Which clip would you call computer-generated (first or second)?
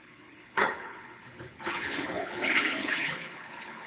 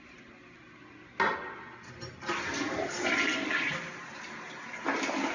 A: first